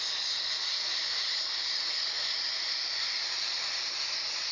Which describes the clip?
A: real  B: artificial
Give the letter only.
A